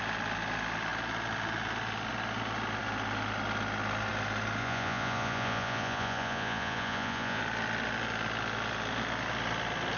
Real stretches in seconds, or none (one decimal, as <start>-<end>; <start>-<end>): 0.0-4.6; 7.4-10.0